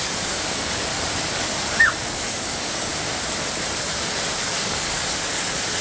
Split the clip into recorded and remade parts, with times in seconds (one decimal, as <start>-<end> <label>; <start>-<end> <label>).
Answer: 0.0-0.9 remade; 0.9-1.5 recorded; 1.5-2.9 remade; 2.9-4.4 recorded; 4.4-5.8 remade